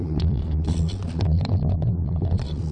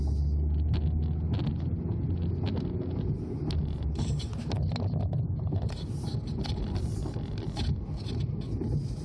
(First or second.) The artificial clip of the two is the first